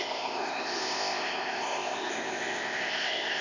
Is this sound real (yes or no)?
no